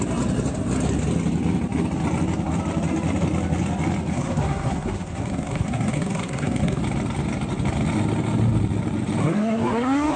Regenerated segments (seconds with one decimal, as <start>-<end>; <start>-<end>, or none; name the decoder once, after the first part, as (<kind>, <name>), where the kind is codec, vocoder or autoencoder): 4.1-6.8 (codec, SNAC); 9.2-10.2